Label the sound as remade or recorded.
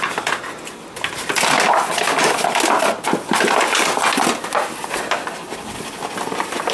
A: recorded